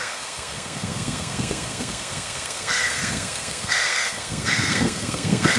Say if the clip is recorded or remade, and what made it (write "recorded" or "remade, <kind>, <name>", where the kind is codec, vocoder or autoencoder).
remade, codec, SNAC